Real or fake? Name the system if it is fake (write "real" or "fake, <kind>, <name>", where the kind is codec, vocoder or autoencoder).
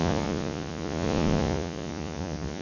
fake, vocoder, Vocos